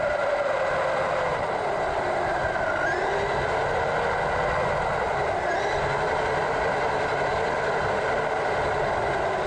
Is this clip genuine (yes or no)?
yes